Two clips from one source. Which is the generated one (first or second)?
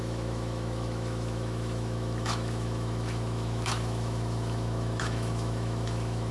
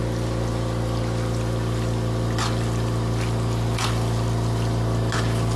first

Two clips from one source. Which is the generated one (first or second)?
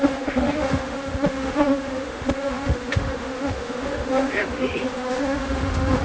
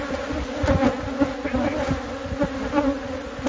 first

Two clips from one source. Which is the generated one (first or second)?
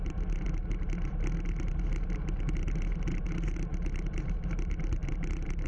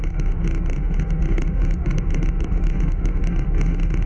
second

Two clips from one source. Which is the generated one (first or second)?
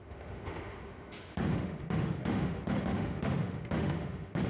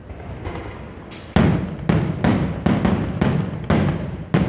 first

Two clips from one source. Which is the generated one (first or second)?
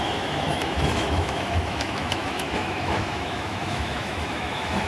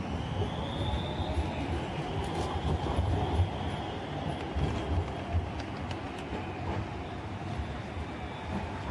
first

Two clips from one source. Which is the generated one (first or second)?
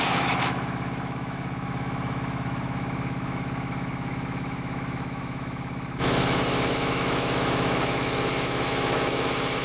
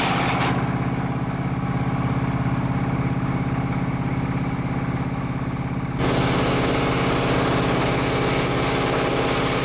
first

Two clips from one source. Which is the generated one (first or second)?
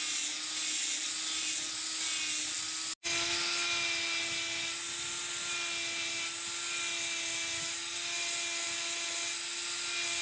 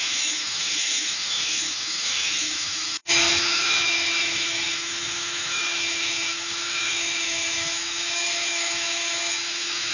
second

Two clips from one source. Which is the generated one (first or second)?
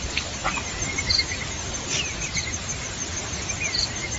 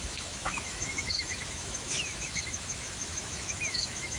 second